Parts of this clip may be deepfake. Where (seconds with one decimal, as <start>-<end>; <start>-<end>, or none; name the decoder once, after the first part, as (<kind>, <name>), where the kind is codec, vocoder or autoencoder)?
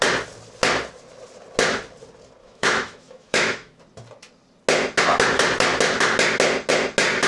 2.4-3.8 (autoencoder, DAC-VAE)